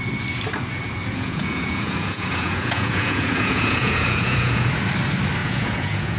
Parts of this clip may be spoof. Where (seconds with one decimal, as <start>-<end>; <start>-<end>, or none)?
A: 1.0-4.7; 5.4-6.2